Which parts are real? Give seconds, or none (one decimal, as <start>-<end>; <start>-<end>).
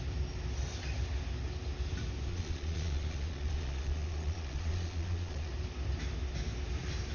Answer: 0.0-2.3; 5.5-7.1